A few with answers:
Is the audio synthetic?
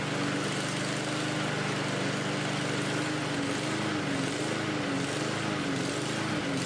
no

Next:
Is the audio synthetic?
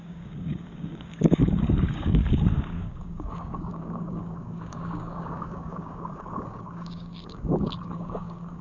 yes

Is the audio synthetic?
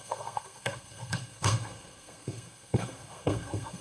yes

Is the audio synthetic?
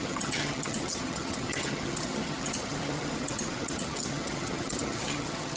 yes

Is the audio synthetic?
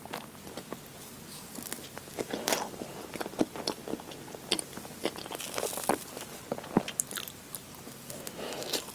no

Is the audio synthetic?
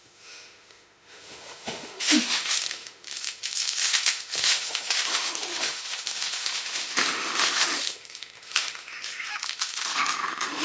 yes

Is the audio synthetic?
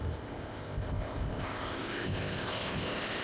yes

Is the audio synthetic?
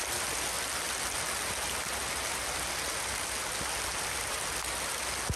no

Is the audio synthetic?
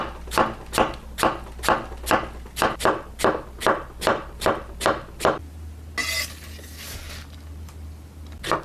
no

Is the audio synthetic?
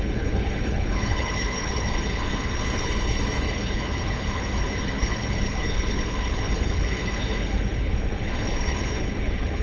yes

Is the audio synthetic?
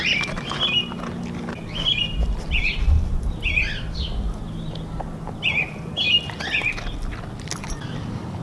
no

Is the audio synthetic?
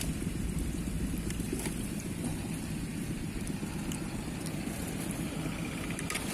yes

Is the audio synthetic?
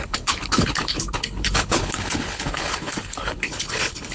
yes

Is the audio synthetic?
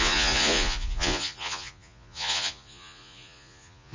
yes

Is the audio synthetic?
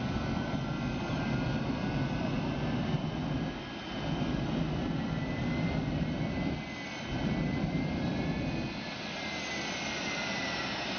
no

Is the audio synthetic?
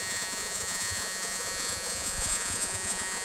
yes